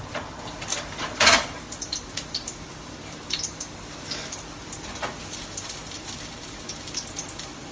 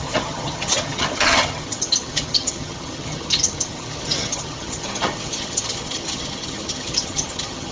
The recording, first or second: first